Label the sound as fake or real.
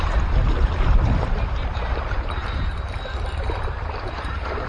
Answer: fake